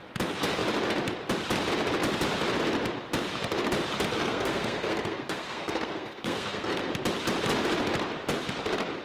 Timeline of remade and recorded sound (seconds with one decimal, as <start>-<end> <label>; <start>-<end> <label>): 0.0-4.1 recorded; 4.1-6.9 remade; 6.9-9.0 recorded